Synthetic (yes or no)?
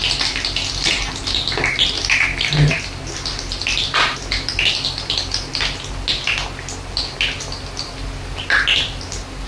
no